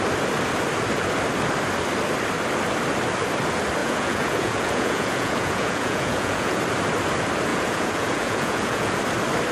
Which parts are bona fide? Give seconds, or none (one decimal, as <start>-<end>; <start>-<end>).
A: 0.0-3.8; 6.6-7.5; 9.0-9.5